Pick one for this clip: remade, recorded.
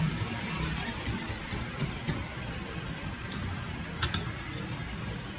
recorded